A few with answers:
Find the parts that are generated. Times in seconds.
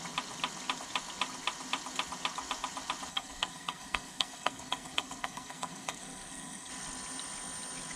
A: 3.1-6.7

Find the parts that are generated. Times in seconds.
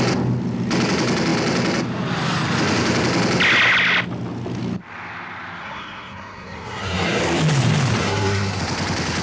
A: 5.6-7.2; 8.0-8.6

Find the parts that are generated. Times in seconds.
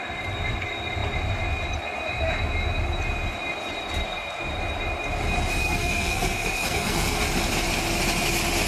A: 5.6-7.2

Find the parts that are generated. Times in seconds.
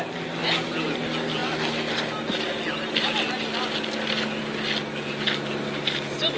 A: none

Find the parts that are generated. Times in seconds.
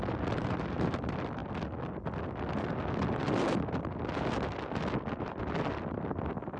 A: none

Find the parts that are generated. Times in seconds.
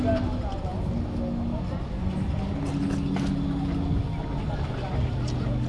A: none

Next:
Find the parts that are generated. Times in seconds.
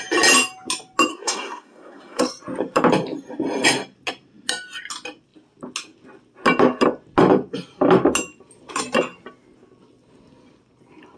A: 1.1-2.2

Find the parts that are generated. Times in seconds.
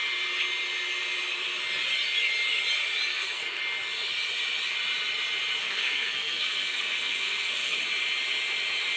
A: 3.1-3.6; 5.6-7.8